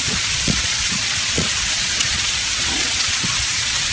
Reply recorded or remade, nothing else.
remade